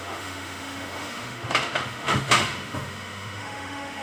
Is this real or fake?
fake